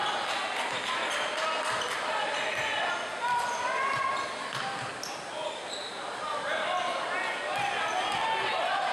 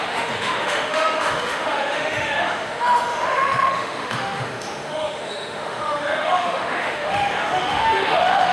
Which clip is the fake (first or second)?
second